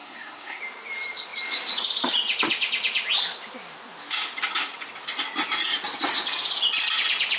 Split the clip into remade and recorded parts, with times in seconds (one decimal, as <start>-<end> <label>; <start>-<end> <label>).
0.0-0.6 remade; 0.6-7.4 recorded